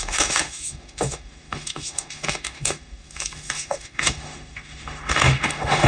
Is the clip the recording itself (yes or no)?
no